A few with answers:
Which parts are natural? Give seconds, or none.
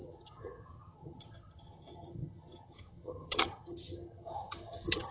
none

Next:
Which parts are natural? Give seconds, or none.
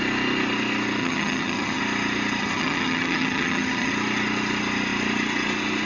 0.0-1.0; 1.8-2.4; 3.9-5.9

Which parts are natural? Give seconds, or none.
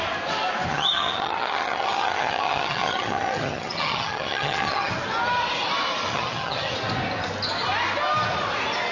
0.0-0.7; 4.9-6.1; 6.7-8.9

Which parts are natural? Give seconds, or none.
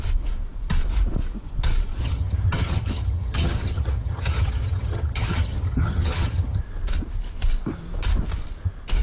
0.0-2.0; 6.6-9.0